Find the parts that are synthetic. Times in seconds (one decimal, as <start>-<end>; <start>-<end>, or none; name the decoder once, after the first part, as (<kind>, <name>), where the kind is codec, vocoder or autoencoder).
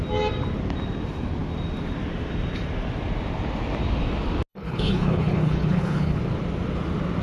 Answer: 4.5-6.2 (codec, HILCodec)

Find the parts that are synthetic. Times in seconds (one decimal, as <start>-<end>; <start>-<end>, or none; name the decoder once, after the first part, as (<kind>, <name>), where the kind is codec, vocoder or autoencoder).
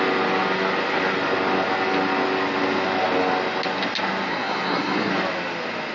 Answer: 4.3-5.1 (codec, SNAC)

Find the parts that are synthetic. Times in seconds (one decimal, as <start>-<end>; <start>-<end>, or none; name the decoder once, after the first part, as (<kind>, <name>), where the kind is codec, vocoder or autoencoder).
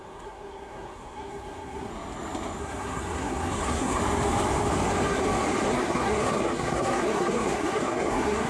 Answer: 0.0-1.9 (codec, SNAC); 2.6-4.0; 5.7-8.5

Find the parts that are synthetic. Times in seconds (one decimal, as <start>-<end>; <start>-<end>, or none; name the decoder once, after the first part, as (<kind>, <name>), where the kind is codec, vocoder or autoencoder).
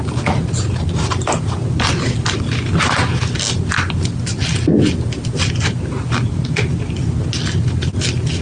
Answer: none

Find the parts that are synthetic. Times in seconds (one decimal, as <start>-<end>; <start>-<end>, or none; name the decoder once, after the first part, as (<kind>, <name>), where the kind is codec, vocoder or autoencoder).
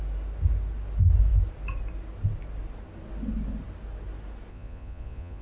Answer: 4.5-5.4 (vocoder, Vocos)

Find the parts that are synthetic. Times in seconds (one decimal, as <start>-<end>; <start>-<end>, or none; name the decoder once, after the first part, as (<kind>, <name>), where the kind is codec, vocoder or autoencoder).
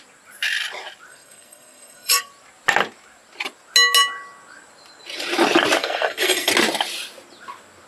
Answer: 1.1-2.3 (codec, SNAC); 5.8-6.5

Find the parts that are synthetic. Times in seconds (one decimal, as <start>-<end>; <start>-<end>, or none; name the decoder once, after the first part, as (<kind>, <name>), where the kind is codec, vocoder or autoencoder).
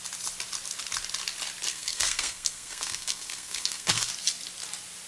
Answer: 1.7-4.1 (codec, SNAC)